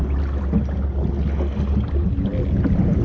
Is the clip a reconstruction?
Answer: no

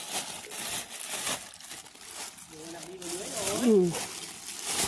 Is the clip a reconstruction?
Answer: no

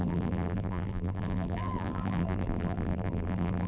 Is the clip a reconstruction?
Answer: yes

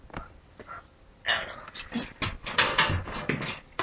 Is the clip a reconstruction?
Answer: no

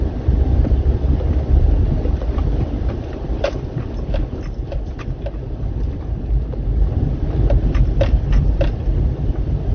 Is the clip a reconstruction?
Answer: yes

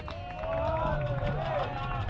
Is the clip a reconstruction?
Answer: no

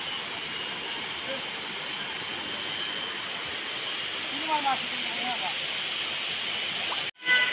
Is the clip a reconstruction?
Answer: no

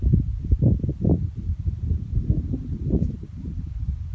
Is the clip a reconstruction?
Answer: yes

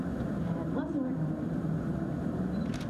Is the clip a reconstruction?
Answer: yes